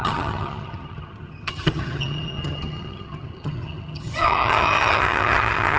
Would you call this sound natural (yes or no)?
no